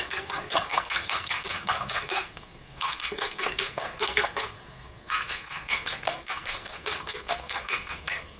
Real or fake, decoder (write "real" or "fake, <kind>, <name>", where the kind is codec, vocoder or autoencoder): fake, codec, SNAC